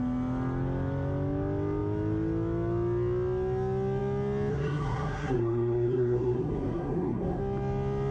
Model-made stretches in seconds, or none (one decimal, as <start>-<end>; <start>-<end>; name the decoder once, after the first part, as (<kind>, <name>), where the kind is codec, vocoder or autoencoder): 4.5-7.4 (codec, SNAC)